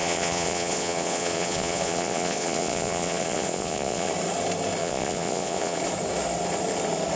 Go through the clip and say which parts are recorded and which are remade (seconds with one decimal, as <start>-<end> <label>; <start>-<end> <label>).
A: 0.0-4.1 remade; 4.1-4.8 recorded; 4.8-5.8 remade; 5.8-7.2 recorded